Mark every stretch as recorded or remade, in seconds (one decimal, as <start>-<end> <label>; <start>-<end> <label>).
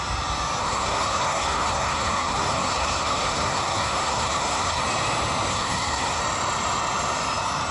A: 0.0-0.6 recorded; 0.6-4.8 remade; 4.8-5.5 recorded; 5.5-6.2 remade; 6.2-7.7 recorded